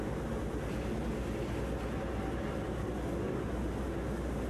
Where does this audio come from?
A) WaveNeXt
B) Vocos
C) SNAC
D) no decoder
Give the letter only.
D